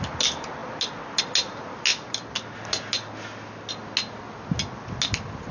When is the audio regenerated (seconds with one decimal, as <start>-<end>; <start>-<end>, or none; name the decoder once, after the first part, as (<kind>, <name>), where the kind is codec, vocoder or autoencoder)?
none